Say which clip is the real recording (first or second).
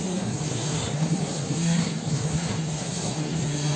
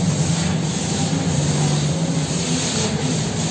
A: second